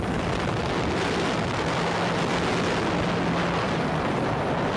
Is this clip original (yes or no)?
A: yes